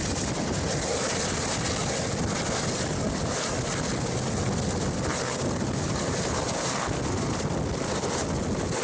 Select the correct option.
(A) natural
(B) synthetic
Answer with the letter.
A